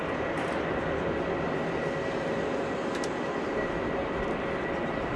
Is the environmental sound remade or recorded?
recorded